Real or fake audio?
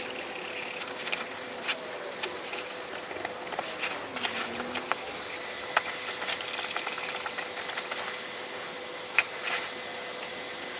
real